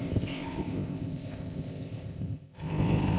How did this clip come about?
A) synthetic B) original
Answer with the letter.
A